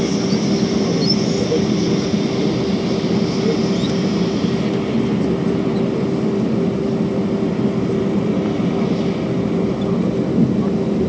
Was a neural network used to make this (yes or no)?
no